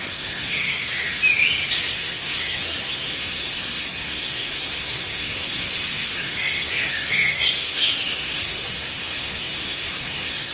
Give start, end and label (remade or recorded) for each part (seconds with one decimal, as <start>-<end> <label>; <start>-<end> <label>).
0.0-1.2 remade; 1.2-1.9 recorded; 1.9-10.5 remade